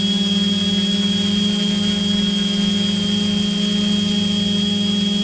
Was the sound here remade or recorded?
recorded